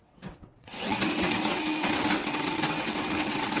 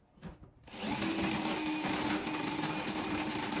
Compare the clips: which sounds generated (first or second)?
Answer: first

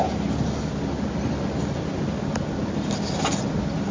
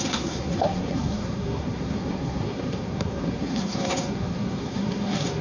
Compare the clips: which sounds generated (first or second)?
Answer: second